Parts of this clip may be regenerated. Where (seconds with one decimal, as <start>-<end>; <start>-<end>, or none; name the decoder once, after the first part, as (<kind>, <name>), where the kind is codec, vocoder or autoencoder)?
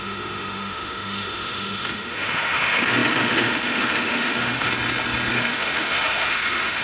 0.0-4.7 (autoencoder, DAC-VAE); 5.3-6.8